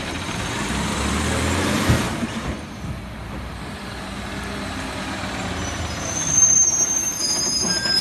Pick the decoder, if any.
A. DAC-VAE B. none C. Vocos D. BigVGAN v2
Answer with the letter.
D